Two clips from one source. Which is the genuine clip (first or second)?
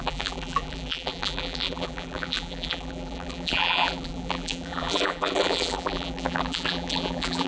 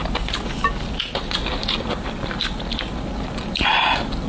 second